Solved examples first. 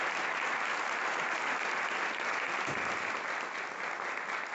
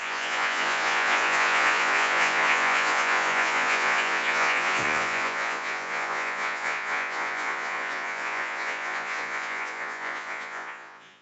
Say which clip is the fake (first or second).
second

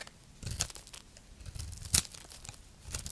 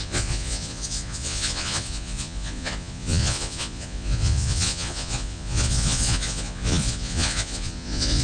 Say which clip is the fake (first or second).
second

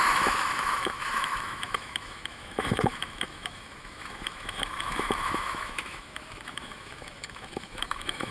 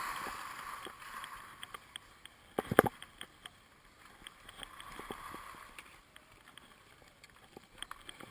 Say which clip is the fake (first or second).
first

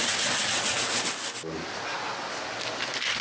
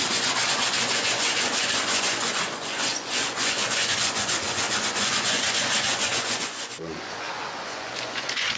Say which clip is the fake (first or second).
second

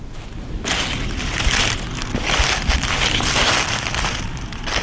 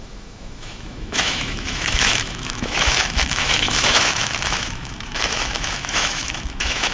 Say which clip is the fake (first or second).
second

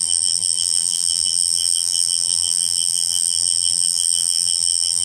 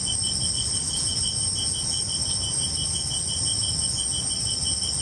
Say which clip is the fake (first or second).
first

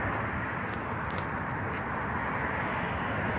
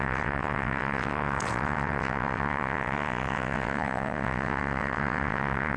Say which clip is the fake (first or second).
second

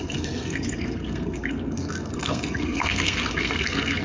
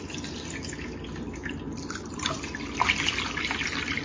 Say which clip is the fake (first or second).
first